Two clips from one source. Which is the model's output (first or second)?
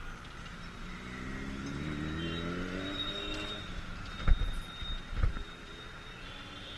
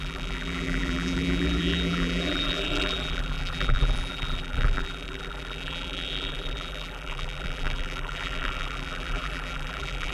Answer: second